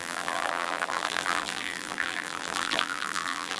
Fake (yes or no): yes